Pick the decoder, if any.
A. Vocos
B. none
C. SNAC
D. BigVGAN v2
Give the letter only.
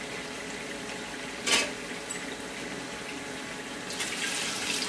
B